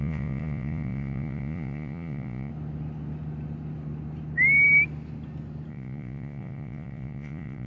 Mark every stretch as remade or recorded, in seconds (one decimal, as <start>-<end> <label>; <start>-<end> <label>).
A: 0.0-2.5 remade; 2.5-5.7 recorded; 5.7-7.7 remade